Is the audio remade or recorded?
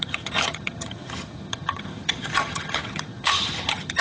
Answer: remade